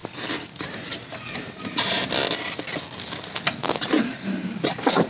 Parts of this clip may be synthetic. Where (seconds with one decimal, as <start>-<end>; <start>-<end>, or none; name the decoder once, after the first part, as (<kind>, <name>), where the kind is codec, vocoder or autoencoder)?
0.6-2.0 (vocoder, BigVGAN v2); 3.8-5.1